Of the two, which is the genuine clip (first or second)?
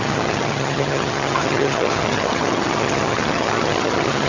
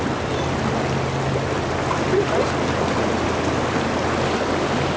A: second